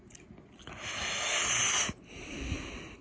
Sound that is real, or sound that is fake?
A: real